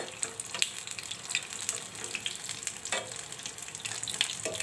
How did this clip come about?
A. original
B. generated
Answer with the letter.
A